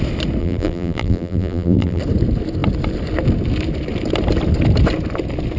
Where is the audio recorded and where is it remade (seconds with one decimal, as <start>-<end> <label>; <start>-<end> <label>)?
0.0-0.4 recorded; 0.4-2.0 remade; 2.0-5.6 recorded